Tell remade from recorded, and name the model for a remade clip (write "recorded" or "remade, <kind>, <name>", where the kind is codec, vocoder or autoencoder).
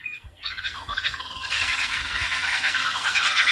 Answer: remade, codec, SNAC